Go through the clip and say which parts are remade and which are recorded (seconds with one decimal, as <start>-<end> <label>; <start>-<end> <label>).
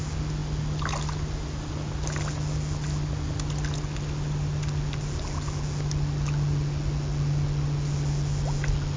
0.0-9.0 recorded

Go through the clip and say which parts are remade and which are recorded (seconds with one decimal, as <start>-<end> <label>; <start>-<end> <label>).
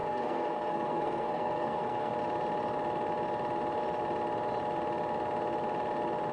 0.0-2.1 remade; 2.1-6.3 recorded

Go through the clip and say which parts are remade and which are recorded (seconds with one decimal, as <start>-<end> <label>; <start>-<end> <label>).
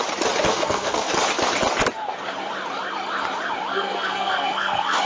0.0-0.5 recorded; 0.5-1.1 remade; 1.1-3.7 recorded; 3.7-5.0 remade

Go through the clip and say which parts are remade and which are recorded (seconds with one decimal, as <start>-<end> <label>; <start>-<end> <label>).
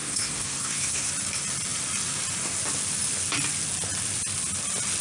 0.0-1.1 remade; 1.1-5.0 recorded